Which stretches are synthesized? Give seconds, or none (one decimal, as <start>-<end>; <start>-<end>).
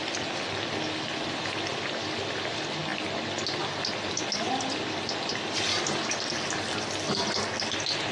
none